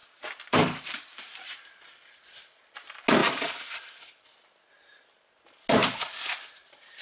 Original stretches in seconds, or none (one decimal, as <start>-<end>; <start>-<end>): 1.8-5.8